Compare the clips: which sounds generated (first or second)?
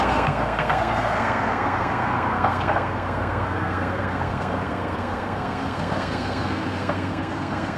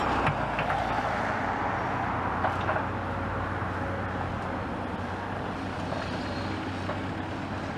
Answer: first